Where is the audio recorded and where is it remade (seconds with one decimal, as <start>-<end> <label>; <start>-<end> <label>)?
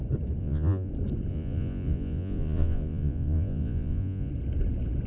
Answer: 0.0-0.4 recorded; 0.4-0.9 remade; 0.9-1.3 recorded; 1.3-4.3 remade; 4.3-5.1 recorded